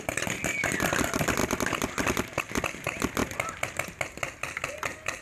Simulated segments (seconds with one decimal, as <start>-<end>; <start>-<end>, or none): none